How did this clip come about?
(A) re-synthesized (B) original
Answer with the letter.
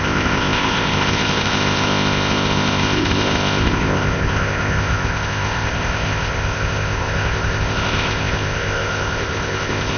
A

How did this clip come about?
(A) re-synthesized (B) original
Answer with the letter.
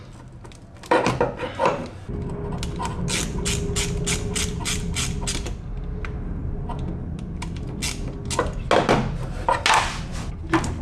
B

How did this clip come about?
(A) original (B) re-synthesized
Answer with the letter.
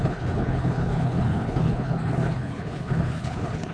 B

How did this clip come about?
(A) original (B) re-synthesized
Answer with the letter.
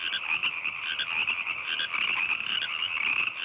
A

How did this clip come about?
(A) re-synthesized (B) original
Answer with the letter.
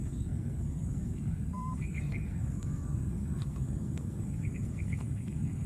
A